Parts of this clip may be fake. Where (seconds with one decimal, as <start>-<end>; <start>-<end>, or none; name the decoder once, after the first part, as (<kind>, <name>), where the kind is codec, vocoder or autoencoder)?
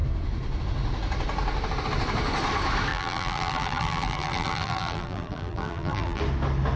2.9-6.2 (vocoder, BigVGAN v2)